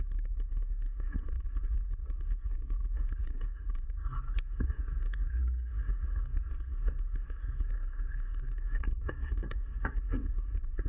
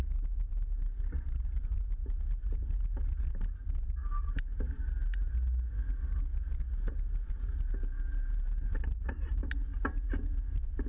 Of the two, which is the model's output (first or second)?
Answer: first